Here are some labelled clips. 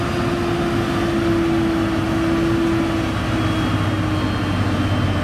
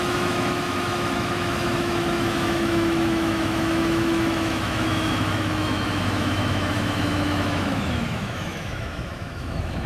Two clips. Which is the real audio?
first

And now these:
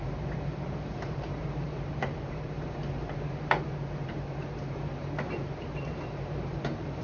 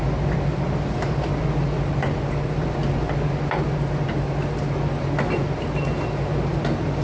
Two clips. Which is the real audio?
second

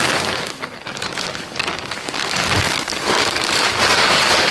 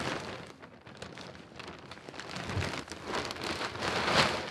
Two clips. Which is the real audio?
second